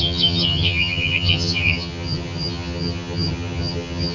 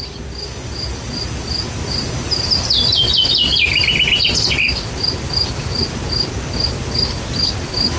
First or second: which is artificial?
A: first